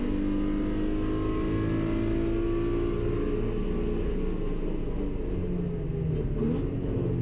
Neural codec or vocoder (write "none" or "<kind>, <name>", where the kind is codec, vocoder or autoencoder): none